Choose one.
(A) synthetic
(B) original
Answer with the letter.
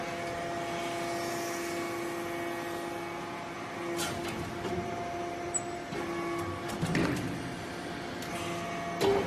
B